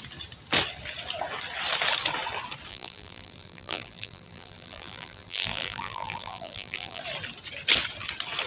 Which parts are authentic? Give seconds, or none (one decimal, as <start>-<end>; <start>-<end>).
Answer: 0.0-2.7; 7.0-8.5